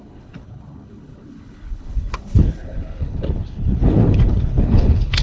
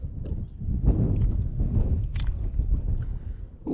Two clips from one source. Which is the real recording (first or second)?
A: second